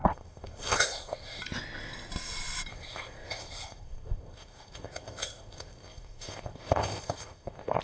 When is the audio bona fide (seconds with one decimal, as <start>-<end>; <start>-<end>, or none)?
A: 1.4-2.7